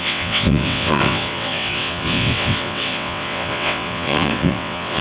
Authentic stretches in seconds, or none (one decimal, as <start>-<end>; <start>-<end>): none